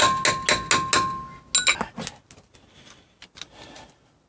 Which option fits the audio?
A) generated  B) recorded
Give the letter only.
B